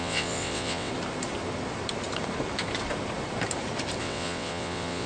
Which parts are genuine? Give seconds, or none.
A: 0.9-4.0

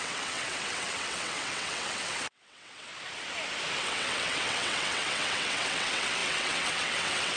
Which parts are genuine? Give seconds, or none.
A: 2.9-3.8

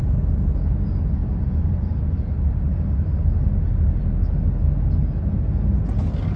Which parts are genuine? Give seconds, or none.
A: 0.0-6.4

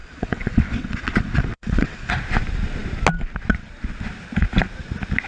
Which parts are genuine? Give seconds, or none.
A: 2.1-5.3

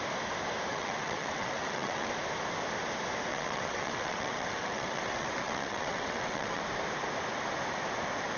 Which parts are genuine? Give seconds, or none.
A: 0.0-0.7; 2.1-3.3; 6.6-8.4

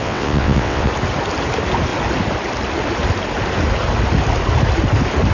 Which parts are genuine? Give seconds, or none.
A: 0.9-5.3

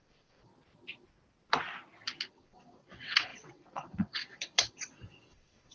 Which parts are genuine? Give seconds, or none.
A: 0.5-2.3